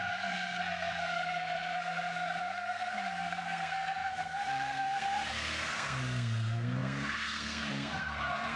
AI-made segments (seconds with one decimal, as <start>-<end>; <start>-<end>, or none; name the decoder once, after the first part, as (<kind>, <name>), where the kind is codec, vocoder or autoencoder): 0.0-8.6 (codec, SNAC)